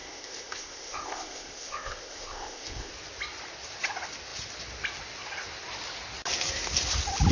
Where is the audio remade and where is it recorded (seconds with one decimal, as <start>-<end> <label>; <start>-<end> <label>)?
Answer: 0.0-2.9 remade; 2.9-7.3 recorded